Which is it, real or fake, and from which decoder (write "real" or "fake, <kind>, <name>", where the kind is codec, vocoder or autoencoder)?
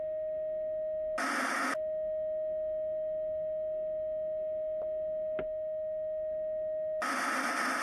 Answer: real